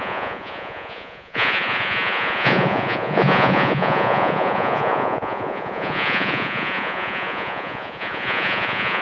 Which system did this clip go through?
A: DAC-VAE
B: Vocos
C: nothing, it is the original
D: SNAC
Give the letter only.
B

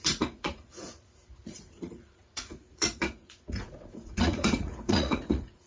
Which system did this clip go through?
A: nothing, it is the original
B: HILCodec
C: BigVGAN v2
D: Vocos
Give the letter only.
D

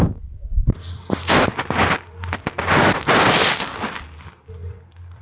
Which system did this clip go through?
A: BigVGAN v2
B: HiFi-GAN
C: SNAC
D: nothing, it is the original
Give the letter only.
D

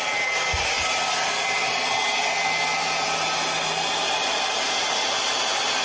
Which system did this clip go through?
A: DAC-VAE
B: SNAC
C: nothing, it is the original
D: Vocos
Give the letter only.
C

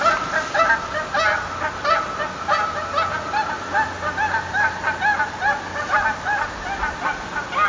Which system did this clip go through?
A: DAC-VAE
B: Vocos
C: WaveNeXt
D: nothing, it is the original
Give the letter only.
D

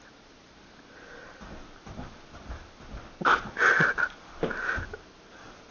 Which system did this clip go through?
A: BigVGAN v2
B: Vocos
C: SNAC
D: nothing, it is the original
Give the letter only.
D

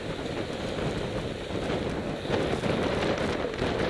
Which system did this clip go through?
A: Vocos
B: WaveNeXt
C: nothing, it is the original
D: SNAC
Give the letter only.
C